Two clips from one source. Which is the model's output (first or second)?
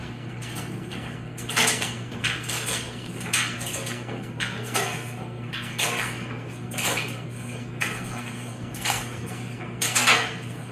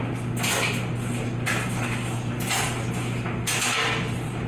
first